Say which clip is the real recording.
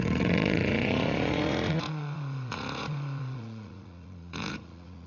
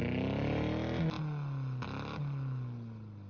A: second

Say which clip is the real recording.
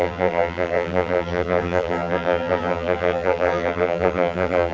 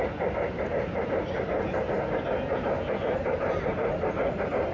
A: second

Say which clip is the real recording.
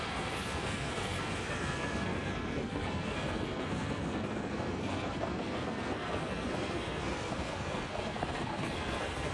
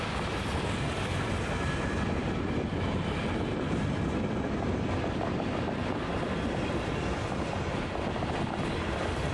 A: second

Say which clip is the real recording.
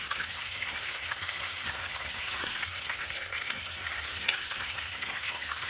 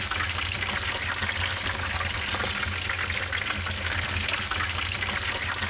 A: second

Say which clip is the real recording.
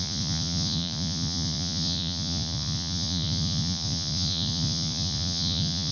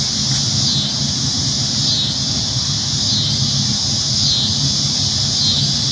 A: second